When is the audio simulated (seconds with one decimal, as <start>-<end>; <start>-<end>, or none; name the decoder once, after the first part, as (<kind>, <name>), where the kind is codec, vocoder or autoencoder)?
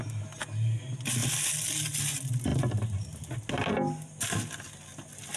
none